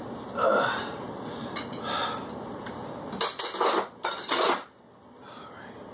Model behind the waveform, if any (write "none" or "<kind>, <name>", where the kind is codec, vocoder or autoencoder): none